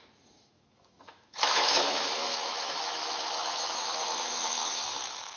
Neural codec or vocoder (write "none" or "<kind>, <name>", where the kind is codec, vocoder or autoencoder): autoencoder, DAC-VAE